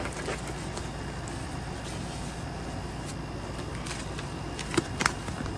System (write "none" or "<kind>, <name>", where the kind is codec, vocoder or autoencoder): none